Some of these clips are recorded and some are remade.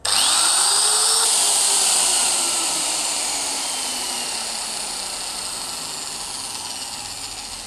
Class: recorded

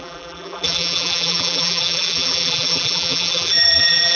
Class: remade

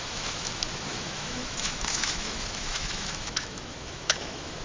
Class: remade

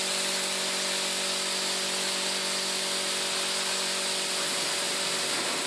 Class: recorded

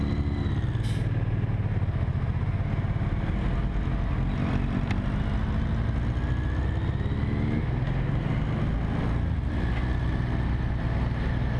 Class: recorded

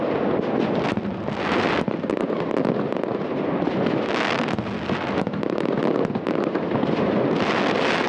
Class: recorded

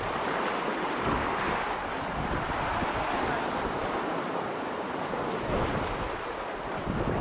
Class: recorded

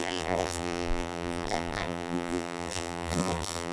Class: remade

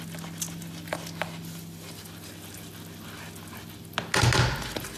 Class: recorded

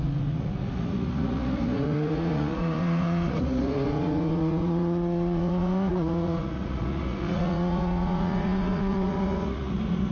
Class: remade